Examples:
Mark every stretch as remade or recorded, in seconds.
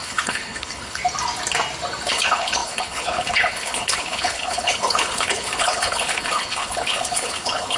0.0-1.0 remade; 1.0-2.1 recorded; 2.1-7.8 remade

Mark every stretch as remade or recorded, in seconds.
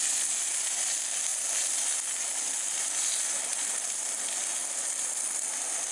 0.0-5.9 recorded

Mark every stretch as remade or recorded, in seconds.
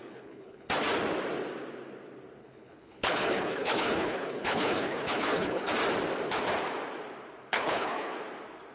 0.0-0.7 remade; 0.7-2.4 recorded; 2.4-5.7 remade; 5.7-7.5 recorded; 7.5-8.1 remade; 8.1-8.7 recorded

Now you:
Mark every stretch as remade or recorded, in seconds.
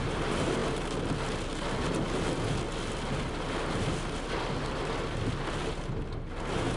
0.0-6.8 recorded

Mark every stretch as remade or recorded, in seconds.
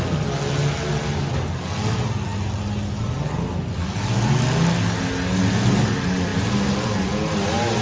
0.0-7.8 recorded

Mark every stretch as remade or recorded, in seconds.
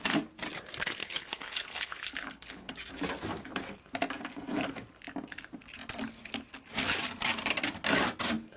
0.0-1.0 recorded; 1.0-2.7 remade; 2.7-8.6 recorded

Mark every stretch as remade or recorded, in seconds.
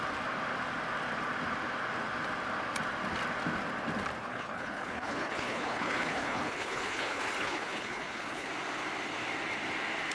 0.0-4.2 recorded; 4.2-8.5 remade; 8.5-10.1 recorded